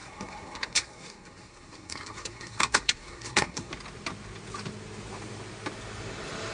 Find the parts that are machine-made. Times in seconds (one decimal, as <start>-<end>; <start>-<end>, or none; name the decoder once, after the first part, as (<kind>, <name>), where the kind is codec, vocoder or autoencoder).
0.0-3.7 (codec, SNAC)